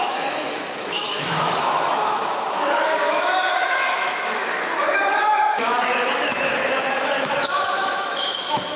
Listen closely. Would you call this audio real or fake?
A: fake